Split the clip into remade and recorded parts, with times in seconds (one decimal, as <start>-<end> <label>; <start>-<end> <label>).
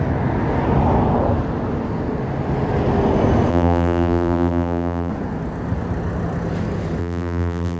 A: 0.0-3.5 recorded; 3.5-5.1 remade; 5.1-7.0 recorded; 7.0-7.8 remade